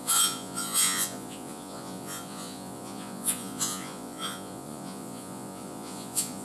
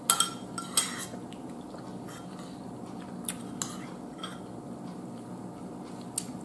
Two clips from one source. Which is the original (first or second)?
second